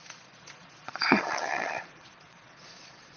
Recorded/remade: remade